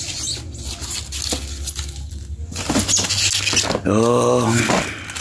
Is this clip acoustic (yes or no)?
yes